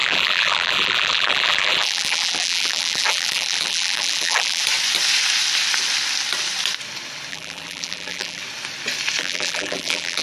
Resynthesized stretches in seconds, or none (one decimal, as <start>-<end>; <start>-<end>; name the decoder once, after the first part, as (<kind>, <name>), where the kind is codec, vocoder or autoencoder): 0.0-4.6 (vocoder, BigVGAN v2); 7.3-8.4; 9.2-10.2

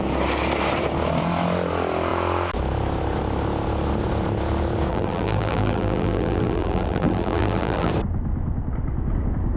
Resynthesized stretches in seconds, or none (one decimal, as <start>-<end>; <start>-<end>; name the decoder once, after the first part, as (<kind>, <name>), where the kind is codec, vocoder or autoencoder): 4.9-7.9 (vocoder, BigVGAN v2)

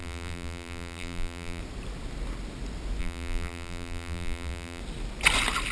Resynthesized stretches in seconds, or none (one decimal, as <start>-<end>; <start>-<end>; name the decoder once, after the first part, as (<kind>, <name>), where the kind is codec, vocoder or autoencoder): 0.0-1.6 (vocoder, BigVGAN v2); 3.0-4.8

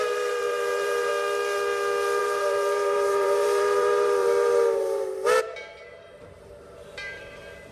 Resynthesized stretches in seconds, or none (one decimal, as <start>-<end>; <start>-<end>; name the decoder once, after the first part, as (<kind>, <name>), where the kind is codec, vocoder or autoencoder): 0.0-1.1 (vocoder, BigVGAN v2); 2.2-7.7

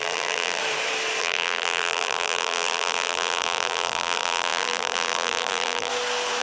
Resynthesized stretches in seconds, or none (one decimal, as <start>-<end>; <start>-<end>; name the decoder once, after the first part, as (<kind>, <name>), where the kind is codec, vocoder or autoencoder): 0.0-0.6 (vocoder, BigVGAN v2); 1.2-5.9

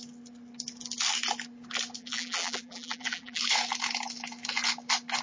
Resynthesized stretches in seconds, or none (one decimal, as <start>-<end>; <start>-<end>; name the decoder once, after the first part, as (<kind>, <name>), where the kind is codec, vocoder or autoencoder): 2.0-3.4 (vocoder, BigVGAN v2)

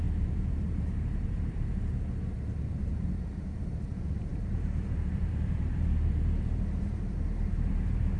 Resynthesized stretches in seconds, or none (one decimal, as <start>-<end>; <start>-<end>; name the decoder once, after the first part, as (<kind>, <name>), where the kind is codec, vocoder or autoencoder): 0.0-8.2 (vocoder, BigVGAN v2)